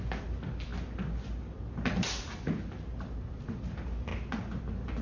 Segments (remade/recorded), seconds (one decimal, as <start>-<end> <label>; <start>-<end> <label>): 0.0-5.0 recorded